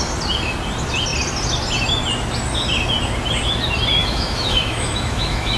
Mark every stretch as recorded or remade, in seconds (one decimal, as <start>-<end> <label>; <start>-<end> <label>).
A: 0.0-4.0 recorded; 4.0-5.6 remade